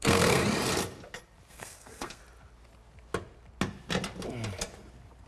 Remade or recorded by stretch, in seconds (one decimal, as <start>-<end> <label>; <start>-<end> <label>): 0.0-0.4 remade; 0.4-1.5 recorded; 1.5-2.2 remade; 2.2-5.3 recorded